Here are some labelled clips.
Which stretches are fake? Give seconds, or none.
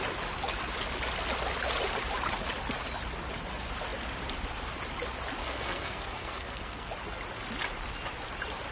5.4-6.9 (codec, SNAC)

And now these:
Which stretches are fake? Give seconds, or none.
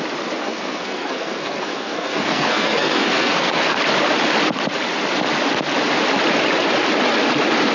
0.4-3.8 (codec, SNAC)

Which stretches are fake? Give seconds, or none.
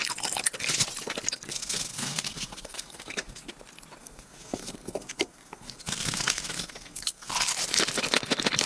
1.5-3.5 (codec, SNAC); 4.0-7.3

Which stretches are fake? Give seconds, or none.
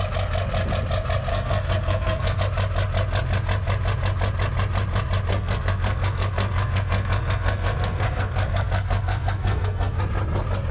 1.3-2.4 (codec, SNAC); 5.3-10.0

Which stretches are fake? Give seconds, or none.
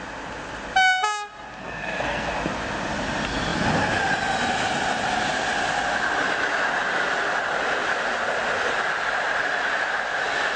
1.6-2.3 (codec, SNAC)